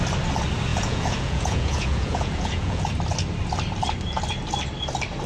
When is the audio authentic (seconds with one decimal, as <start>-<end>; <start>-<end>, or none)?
0.0-0.7; 2.9-5.3